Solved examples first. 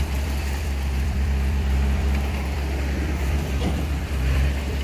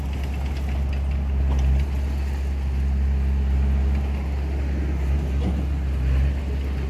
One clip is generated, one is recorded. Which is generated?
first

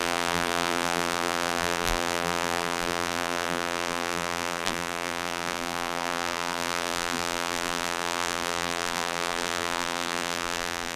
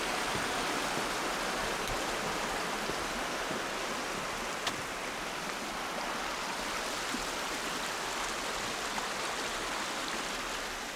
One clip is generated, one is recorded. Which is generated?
first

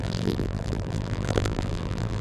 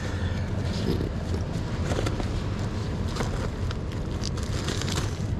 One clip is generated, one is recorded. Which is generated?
first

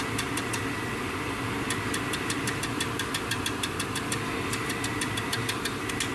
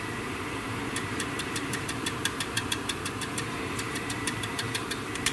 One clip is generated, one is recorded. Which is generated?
second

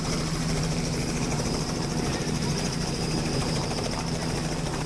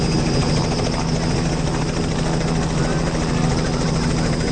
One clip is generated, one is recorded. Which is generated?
first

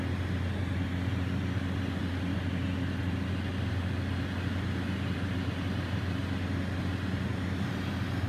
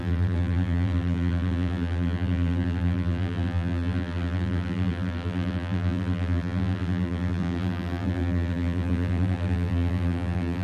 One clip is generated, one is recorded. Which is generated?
second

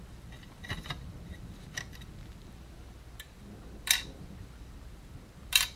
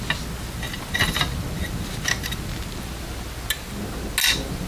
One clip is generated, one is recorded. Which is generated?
first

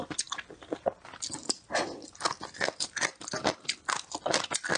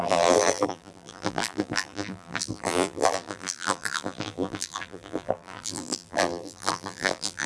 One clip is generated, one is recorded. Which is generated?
second